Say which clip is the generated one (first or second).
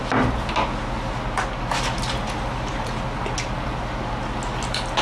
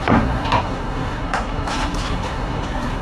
second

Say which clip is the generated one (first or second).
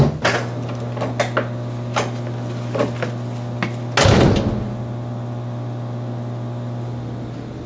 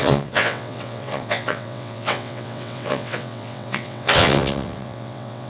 second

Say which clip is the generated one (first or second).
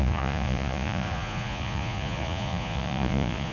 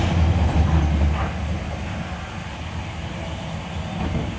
first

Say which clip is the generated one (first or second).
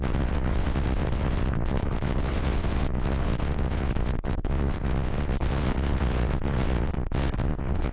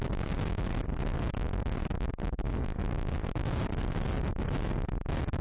first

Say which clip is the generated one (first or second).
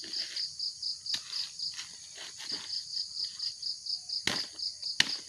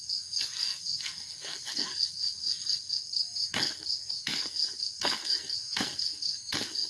second